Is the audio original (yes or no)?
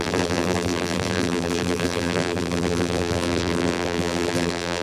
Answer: no